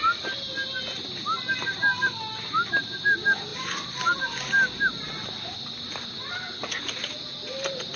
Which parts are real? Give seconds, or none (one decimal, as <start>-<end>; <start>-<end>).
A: 0.0-8.0